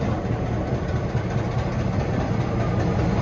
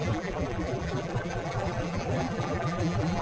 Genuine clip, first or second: first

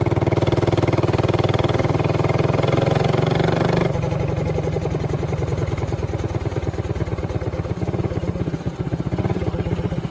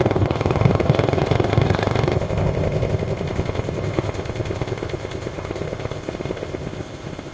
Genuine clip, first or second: first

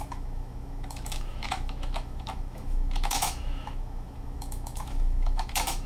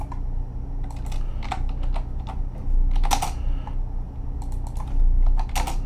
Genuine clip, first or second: second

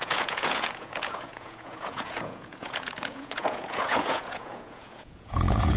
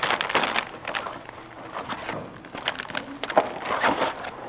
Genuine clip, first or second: second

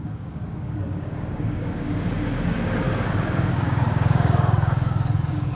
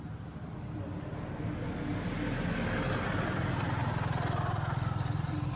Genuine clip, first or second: second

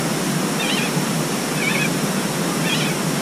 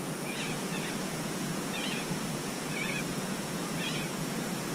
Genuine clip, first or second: first